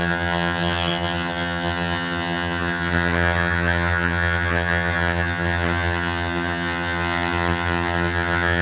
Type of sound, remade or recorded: remade